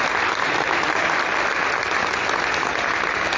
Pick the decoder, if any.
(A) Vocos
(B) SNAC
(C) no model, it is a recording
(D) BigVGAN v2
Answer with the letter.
C